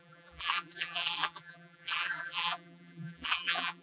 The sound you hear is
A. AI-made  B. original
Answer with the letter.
A